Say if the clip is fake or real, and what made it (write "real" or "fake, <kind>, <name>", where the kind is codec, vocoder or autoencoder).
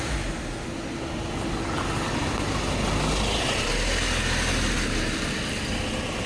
real